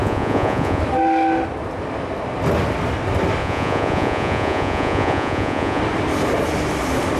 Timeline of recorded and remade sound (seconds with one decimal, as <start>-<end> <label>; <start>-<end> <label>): 0.0-0.8 remade; 0.8-3.4 recorded; 3.4-5.8 remade; 5.8-7.2 recorded